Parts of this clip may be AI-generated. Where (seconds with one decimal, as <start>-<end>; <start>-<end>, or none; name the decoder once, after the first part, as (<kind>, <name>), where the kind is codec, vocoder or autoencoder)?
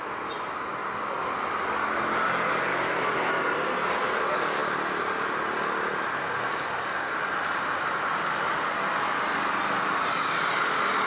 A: none